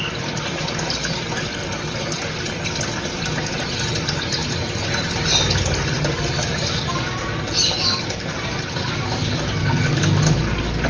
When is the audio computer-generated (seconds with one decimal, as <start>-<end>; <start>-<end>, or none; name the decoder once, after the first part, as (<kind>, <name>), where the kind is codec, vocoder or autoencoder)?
9.6-10.2 (codec, DAC)